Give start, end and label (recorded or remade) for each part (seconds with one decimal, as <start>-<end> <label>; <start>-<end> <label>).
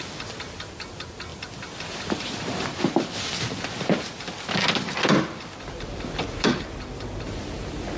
0.0-8.0 recorded